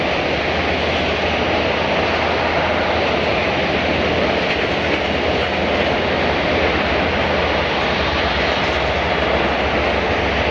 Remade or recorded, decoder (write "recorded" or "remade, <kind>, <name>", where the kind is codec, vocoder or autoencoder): recorded